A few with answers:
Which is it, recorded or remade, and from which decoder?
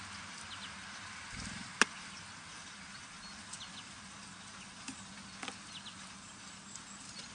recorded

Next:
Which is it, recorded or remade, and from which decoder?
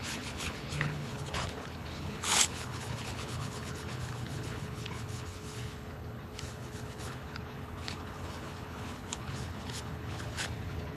remade, codec, HILCodec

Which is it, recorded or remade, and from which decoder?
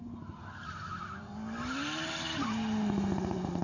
recorded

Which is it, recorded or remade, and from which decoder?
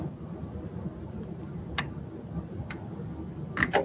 recorded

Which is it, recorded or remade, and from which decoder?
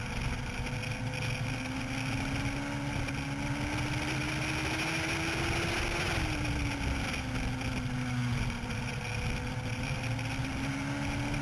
recorded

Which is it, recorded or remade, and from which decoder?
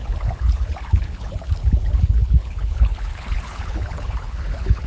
remade, codec, HILCodec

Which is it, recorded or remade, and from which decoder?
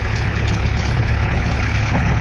remade, codec, HILCodec